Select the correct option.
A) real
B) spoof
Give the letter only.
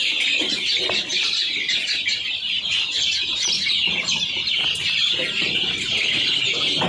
B